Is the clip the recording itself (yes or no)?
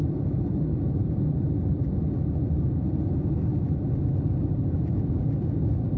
yes